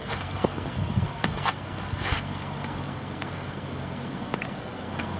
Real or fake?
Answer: fake